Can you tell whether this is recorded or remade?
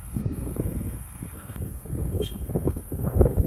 remade